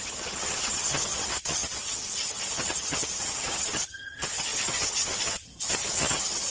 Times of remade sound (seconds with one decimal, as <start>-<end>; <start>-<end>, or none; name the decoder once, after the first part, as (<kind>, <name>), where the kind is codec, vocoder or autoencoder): 0.0-6.5 (vocoder, HiFi-GAN)